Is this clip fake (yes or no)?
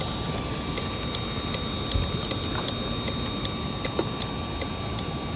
no